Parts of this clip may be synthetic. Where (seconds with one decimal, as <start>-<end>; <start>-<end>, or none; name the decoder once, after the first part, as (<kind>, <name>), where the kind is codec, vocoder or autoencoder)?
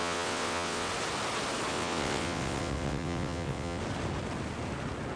0.0-0.9 (vocoder, WaveNeXt); 1.7-3.8